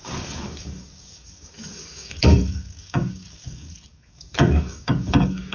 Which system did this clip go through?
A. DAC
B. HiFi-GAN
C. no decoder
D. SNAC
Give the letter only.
A